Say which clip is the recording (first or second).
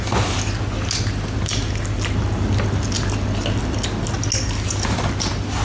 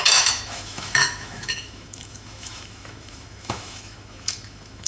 first